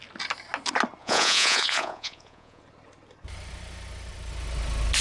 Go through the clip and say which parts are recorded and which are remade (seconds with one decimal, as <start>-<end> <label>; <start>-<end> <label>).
0.0-1.0 recorded; 1.0-2.6 remade; 2.6-5.0 recorded